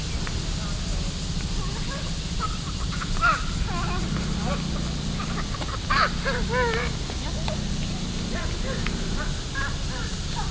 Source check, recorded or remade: recorded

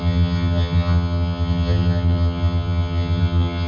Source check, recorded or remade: remade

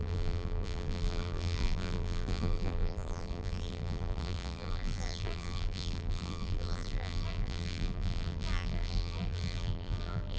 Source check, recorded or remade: remade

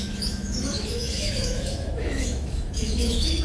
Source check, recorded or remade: remade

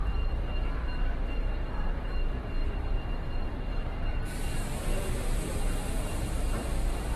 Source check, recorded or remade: remade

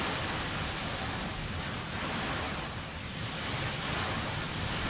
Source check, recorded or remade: recorded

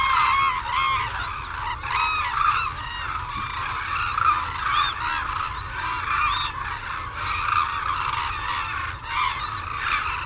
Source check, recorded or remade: recorded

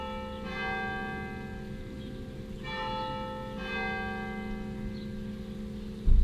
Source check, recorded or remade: recorded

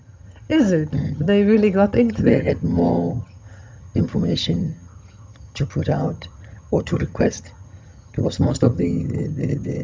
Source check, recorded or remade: remade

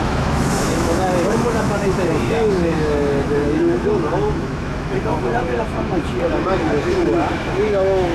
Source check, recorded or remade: remade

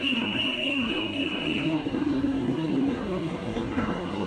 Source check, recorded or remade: remade